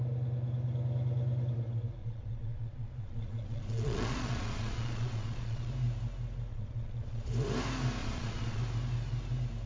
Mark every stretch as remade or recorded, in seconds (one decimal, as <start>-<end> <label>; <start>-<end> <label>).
0.0-2.0 recorded; 2.0-5.7 remade; 5.7-6.5 recorded; 6.5-7.3 remade; 7.3-8.0 recorded; 8.0-8.6 remade; 8.6-9.7 recorded